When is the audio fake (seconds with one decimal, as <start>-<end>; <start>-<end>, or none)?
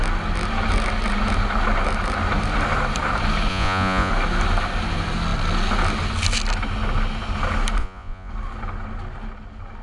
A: 3.5-4.1; 7.8-8.3